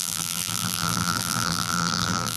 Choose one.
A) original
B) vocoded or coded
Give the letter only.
B